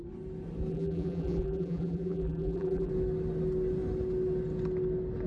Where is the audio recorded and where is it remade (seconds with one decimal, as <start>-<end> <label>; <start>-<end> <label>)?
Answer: 0.0-0.7 recorded; 0.7-2.9 remade; 2.9-5.3 recorded